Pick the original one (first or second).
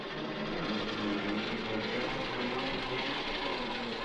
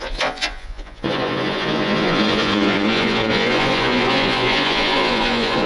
first